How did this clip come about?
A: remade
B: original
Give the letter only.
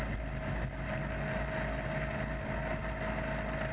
B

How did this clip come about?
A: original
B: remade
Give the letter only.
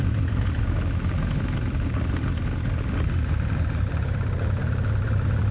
A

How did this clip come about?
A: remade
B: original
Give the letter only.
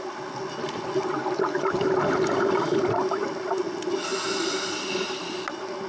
B